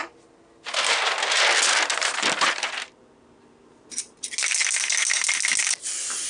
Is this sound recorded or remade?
recorded